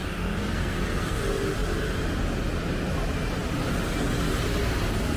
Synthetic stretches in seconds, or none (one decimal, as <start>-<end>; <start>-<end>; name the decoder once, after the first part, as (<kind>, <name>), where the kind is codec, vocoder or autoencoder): 0.0-1.2 (codec, SNAC)